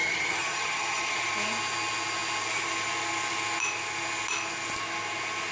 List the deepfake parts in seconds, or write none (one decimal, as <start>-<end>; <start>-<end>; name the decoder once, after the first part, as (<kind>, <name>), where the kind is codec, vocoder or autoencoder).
0.0-1.3 (vocoder, HiFi-GAN)